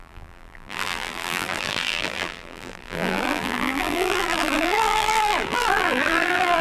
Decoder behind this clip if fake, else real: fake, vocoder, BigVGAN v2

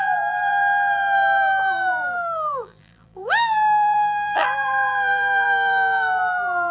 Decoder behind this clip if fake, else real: fake, vocoder, BigVGAN v2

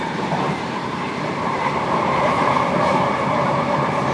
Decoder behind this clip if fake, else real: fake, vocoder, BigVGAN v2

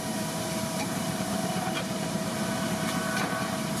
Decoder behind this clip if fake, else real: fake, vocoder, BigVGAN v2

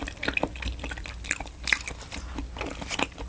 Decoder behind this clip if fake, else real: real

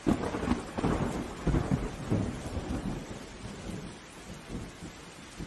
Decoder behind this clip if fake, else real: real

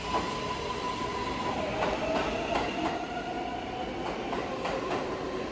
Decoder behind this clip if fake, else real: real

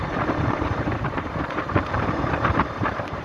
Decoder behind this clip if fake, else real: fake, vocoder, BigVGAN v2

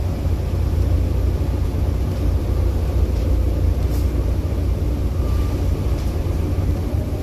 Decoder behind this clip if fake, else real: fake, vocoder, BigVGAN v2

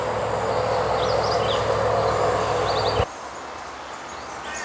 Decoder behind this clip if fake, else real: real